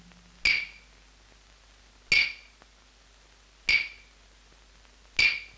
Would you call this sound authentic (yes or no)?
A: yes